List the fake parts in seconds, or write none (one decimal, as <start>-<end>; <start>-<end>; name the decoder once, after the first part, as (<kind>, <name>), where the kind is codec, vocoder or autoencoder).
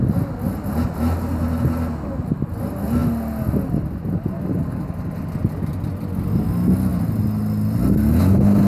none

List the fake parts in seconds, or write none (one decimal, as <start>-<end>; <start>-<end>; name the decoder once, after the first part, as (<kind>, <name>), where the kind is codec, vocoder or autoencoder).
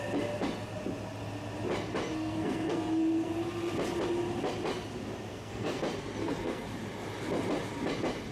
2.1-3.3 (codec, SNAC); 5.3-5.8; 6.2-6.7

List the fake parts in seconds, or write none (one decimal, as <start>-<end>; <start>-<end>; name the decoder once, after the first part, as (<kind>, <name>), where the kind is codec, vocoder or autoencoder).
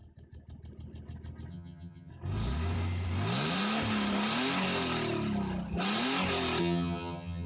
1.5-2.1 (vocoder, HiFi-GAN); 6.6-7.5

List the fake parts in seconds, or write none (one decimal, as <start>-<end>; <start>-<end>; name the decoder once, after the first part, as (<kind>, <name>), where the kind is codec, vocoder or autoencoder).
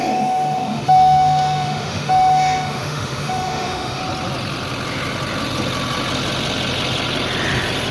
0.0-4.0 (autoencoder, DAC-VAE)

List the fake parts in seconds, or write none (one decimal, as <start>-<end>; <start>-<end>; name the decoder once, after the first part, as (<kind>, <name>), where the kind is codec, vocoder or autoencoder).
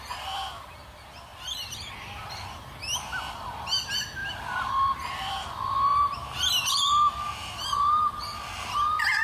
none